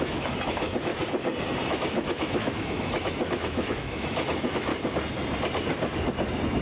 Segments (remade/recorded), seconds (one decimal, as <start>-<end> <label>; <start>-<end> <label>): 0.0-0.9 remade; 0.9-1.7 recorded; 1.7-4.7 remade; 4.7-6.6 recorded